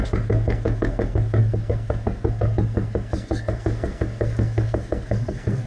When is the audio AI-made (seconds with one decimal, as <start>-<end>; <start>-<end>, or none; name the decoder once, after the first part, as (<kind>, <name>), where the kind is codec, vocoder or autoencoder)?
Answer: 0.0-5.7 (codec, SNAC)